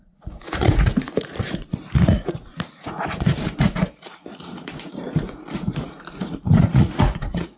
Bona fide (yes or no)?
no